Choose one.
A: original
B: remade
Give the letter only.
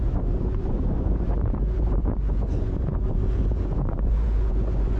B